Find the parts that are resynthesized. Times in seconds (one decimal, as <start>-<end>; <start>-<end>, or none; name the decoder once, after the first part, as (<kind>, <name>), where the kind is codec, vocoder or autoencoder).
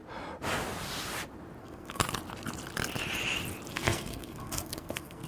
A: 1.6-2.0 (codec, SNAC); 3.7-5.3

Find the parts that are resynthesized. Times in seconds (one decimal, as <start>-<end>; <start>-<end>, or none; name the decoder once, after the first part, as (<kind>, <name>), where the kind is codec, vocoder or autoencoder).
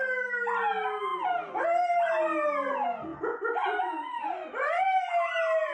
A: none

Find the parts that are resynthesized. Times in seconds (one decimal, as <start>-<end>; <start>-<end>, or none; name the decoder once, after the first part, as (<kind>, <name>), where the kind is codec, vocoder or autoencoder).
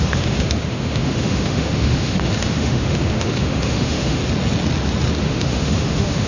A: 0.0-4.2 (autoencoder, DAC-VAE); 5.2-6.3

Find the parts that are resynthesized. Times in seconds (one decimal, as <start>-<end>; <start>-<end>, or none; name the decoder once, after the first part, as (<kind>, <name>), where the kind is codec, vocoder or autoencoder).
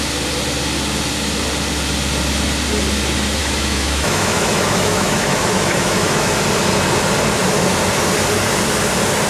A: 3.4-6.3 (autoencoder, DAC-VAE)